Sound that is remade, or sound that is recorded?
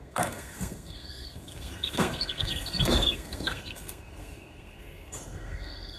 remade